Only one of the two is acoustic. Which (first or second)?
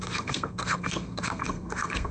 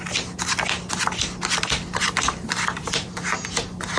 second